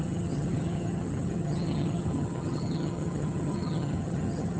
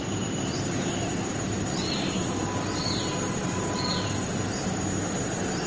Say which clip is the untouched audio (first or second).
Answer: second